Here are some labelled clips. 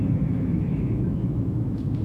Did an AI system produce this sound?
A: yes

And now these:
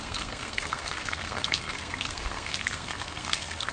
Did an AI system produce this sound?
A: yes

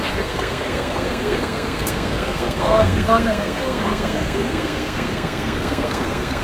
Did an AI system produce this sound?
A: yes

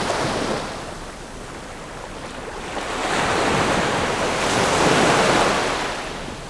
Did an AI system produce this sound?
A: no